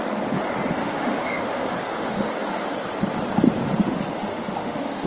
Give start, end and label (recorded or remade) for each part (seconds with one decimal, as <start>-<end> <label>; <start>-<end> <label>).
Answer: 0.0-0.8 recorded; 0.8-2.3 remade; 2.3-4.2 recorded; 4.2-5.1 remade